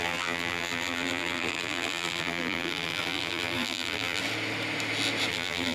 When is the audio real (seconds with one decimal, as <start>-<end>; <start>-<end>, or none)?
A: 4.2-5.3